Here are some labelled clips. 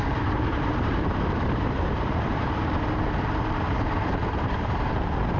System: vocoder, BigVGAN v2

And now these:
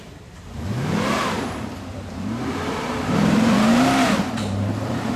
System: vocoder, BigVGAN v2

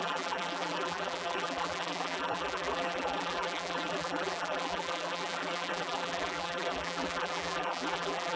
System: vocoder, BigVGAN v2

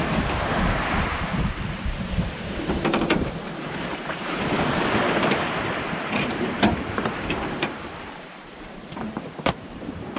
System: vocoder, BigVGAN v2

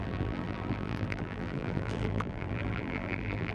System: vocoder, BigVGAN v2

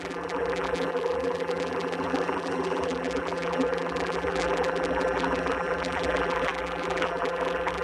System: vocoder, BigVGAN v2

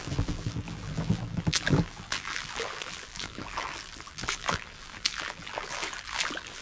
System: vocoder, BigVGAN v2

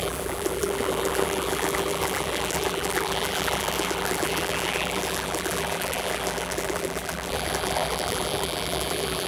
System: vocoder, BigVGAN v2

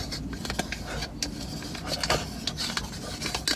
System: none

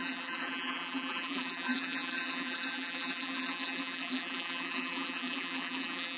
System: vocoder, BigVGAN v2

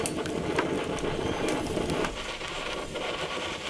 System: none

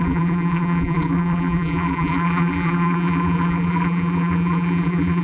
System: vocoder, BigVGAN v2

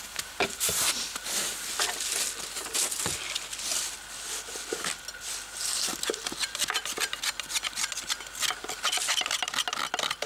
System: none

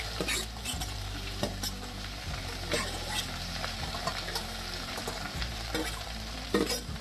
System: vocoder, BigVGAN v2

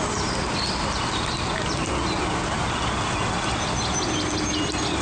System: none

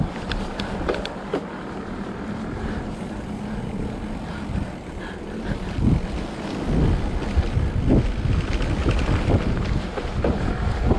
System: none